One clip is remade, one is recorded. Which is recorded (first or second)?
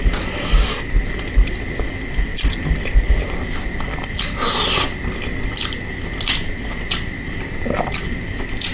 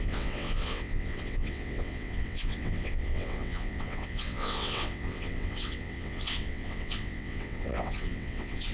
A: first